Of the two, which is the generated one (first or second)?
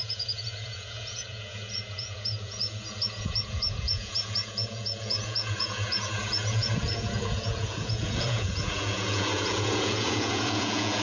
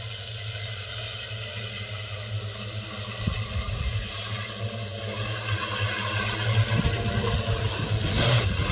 first